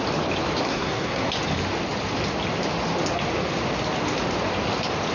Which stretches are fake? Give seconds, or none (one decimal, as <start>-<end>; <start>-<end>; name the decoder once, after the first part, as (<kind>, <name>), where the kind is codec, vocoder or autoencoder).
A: 0.6-1.3 (codec, SNAC)